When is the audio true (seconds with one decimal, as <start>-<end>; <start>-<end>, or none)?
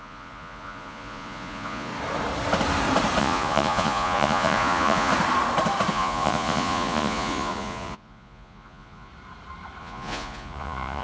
1.9-3.2; 5.1-5.9; 9.1-9.8